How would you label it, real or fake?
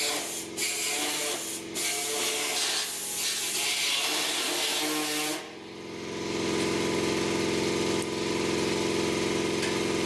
real